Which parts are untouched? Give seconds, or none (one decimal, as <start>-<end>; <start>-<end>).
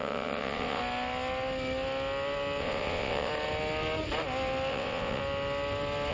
0.8-2.6; 3.3-4.7; 5.2-6.1